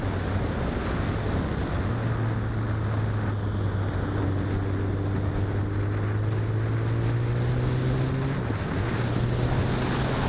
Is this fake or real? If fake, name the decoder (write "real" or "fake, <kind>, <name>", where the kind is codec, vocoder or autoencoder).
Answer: real